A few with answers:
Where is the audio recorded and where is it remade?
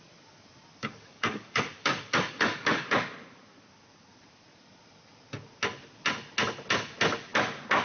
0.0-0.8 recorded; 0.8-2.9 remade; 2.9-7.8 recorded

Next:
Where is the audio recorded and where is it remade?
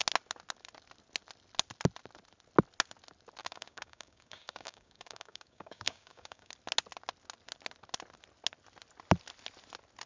0.0-3.4 recorded; 3.4-6.5 remade; 6.5-10.1 recorded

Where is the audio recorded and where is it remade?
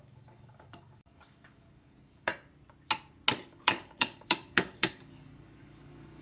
0.0-2.3 remade; 2.3-3.5 recorded; 3.5-6.2 remade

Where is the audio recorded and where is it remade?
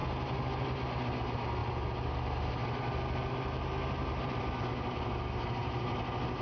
0.0-6.4 recorded